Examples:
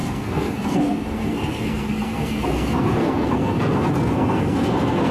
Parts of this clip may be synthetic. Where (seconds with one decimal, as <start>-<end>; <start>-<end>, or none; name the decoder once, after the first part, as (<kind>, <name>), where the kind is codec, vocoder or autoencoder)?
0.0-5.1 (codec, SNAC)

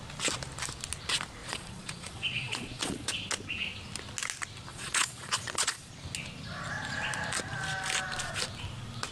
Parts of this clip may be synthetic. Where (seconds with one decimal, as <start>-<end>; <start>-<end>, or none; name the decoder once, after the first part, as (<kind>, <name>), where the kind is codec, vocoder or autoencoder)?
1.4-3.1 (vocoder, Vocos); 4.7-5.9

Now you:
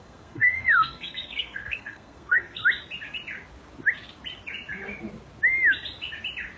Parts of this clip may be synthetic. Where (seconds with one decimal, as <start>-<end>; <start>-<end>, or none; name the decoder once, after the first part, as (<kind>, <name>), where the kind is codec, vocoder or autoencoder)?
0.0-2.6 (codec, SNAC)